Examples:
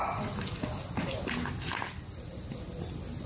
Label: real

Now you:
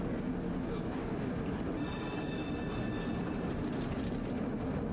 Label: real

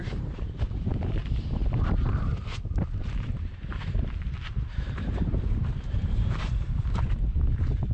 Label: fake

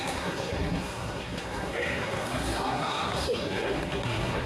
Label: fake